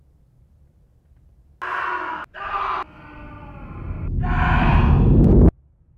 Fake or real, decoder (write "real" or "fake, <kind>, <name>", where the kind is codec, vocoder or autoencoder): real